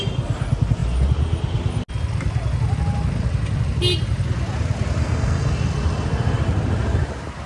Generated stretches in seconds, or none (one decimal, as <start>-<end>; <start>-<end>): 5.0-5.5